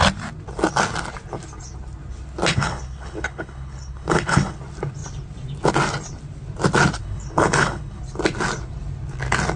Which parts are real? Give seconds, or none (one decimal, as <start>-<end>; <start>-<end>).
0.0-2.5; 4.6-7.0; 8.0-9.6